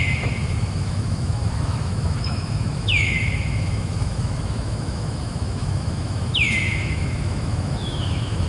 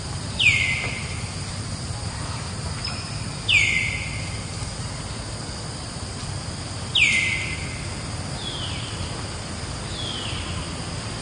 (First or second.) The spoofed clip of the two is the first